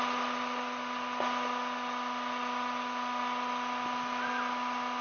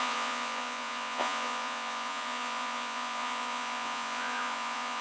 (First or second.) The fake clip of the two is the second